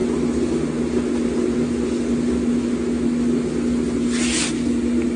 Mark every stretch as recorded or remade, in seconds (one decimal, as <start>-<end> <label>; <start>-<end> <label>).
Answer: 0.0-5.2 recorded